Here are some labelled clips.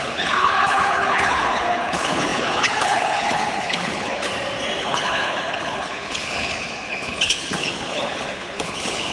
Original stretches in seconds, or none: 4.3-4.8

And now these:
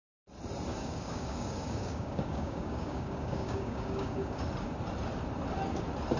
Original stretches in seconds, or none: 0.0-0.7; 4.4-6.2

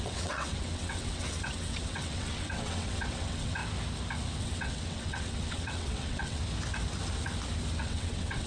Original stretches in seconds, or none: 3.6-4.4; 6.4-7.8

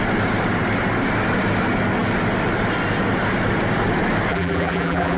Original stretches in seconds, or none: 0.0-4.3

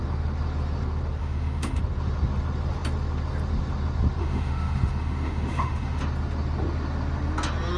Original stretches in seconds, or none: 0.0-1.2; 1.8-4.2; 6.0-7.8

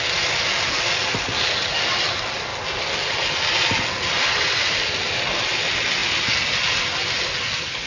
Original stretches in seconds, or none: 0.0-7.9